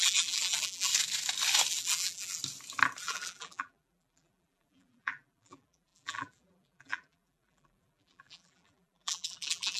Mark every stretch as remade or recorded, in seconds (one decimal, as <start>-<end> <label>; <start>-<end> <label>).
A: 0.0-0.9 remade; 0.9-1.7 recorded; 1.7-2.4 remade; 2.4-3.0 recorded; 3.0-9.8 remade